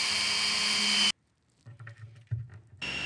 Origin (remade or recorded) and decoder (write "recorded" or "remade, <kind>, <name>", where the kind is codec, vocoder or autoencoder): recorded